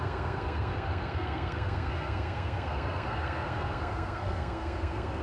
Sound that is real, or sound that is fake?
fake